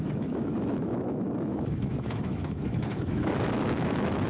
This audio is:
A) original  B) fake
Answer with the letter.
B